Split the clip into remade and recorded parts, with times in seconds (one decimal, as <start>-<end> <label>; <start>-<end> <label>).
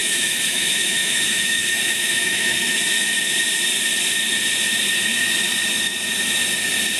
0.0-2.8 remade; 2.8-7.0 recorded